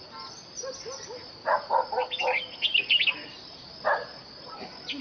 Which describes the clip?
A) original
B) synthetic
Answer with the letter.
A